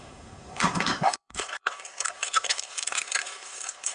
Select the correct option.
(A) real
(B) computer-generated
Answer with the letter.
B